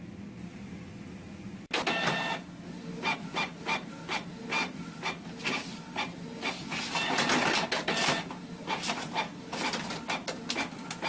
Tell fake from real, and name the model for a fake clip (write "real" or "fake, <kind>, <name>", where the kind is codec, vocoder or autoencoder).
real